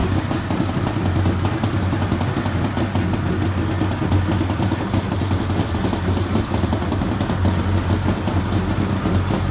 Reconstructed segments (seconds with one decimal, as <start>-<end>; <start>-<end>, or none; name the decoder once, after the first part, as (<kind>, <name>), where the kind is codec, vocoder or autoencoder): none